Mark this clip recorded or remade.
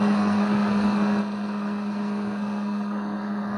remade